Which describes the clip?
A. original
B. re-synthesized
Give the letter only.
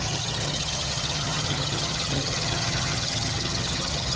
B